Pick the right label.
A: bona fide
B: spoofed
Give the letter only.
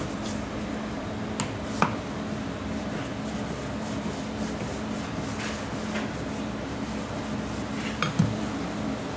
A